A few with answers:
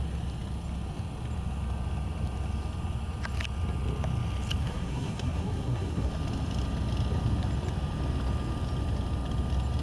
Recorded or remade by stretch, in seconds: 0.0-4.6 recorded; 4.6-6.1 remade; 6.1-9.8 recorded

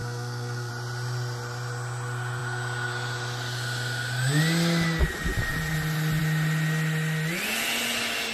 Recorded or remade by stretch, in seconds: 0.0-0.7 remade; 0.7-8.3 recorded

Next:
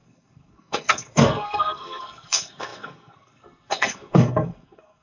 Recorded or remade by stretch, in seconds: 0.0-5.0 remade

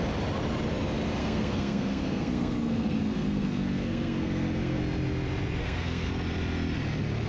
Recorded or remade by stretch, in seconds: 0.0-1.2 recorded; 1.2-4.8 remade; 4.8-5.6 recorded; 5.6-6.1 remade; 6.1-7.3 recorded

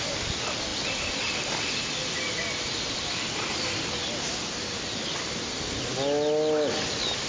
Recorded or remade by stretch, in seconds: 0.0-7.3 recorded